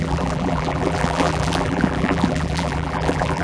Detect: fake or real fake